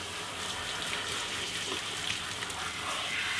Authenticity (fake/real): real